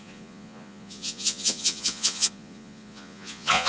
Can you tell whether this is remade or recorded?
remade